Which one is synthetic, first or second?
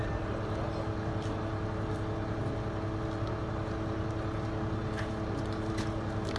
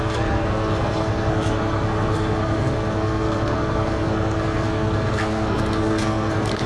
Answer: second